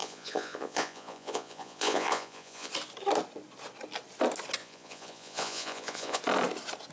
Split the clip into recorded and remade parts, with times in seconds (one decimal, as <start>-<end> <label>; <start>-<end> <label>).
0.0-2.7 remade; 2.7-4.6 recorded; 4.6-6.2 remade; 6.2-6.9 recorded